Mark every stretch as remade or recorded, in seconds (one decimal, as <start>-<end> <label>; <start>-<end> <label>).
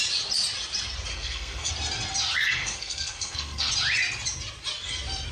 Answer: 0.0-1.1 recorded; 1.1-1.7 remade; 1.7-2.4 recorded; 2.4-3.7 remade; 3.7-5.3 recorded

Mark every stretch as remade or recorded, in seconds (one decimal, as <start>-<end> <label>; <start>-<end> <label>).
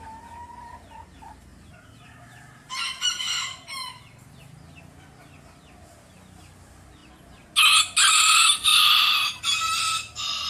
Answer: 0.0-8.7 recorded; 8.7-9.4 remade; 9.4-10.5 recorded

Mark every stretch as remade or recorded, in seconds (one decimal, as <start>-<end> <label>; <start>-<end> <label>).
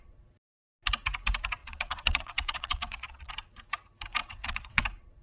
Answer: 0.0-1.6 recorded; 1.6-3.3 remade; 3.3-4.2 recorded; 4.2-4.8 remade; 4.8-5.2 recorded